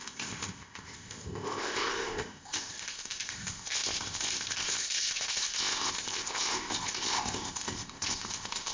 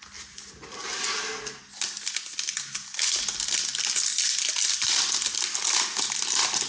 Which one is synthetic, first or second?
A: first